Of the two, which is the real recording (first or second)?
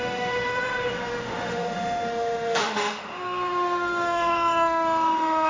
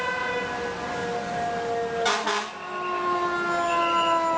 second